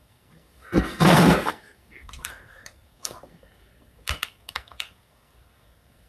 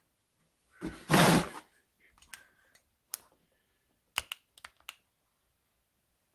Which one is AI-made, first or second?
first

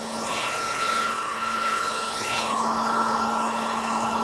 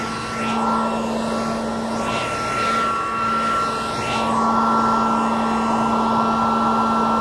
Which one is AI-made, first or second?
first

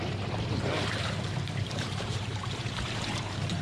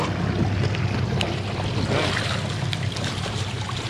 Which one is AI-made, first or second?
first